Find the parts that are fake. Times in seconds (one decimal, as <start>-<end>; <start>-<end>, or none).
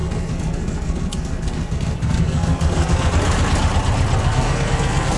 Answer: 0.0-3.1; 4.2-5.2